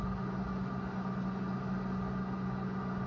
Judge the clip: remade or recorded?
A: recorded